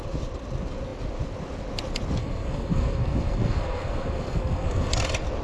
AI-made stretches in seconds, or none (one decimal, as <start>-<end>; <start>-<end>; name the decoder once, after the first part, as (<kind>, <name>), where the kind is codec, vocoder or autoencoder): 2.2-4.9 (codec, SNAC)